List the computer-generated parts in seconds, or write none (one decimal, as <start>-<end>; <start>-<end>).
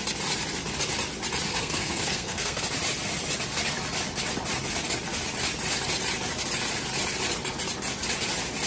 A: 1.5-2.6